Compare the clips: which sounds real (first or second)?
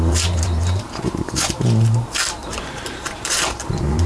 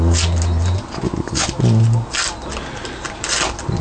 second